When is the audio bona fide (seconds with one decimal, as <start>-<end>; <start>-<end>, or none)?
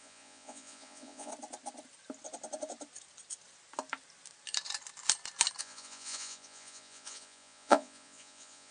1.3-5.6